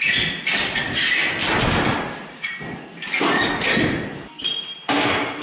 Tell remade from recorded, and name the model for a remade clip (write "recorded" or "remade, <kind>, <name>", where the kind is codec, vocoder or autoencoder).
recorded